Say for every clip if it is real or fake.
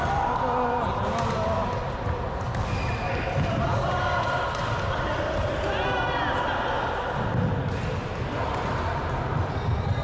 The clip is real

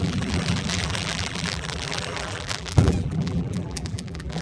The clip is fake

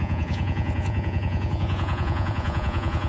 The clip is fake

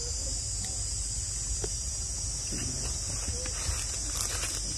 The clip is real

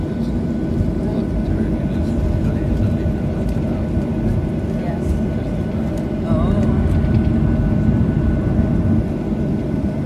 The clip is real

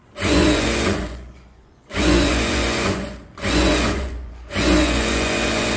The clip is fake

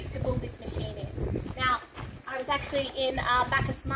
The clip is real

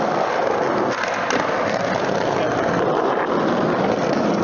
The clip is real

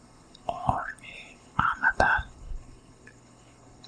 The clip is fake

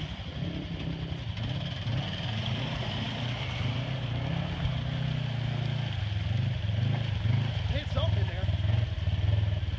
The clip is real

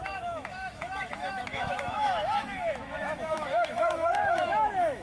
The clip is fake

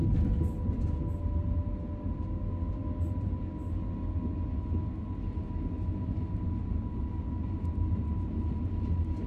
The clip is real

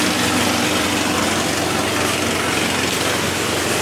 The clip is real